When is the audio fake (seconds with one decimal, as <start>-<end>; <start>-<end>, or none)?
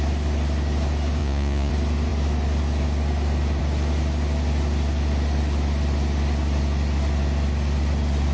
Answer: 1.2-1.7